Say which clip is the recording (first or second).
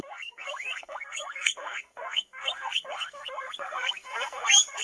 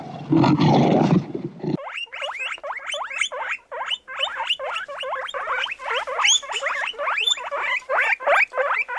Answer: second